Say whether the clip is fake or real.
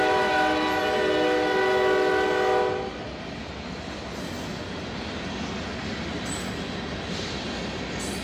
real